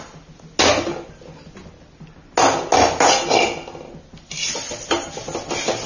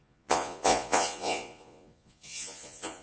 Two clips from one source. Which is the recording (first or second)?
first